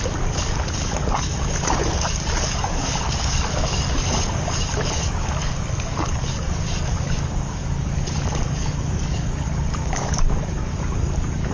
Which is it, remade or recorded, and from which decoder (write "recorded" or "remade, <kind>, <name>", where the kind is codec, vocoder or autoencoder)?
remade, codec, DAC